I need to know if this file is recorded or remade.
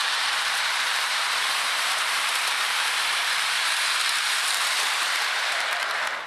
remade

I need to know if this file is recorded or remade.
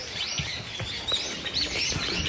recorded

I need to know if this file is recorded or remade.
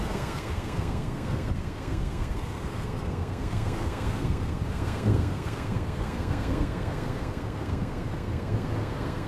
remade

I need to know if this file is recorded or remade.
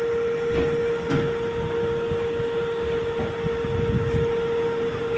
recorded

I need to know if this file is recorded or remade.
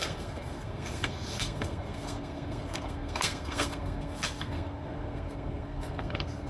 remade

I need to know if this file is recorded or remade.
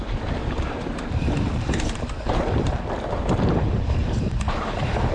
remade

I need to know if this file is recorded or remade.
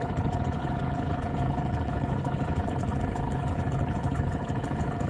remade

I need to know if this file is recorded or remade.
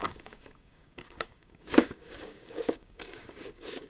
remade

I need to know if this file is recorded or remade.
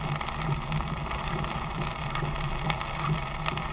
recorded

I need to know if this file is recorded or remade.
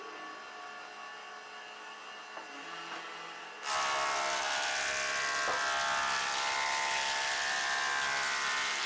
recorded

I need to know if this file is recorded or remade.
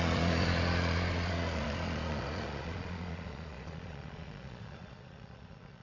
remade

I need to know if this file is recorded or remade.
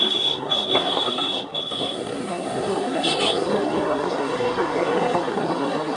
remade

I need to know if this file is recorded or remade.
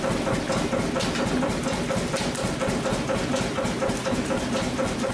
recorded